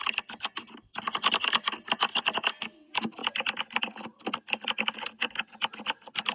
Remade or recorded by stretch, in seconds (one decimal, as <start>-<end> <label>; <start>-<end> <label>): 0.0-6.3 recorded